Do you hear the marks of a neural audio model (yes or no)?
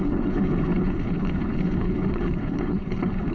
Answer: yes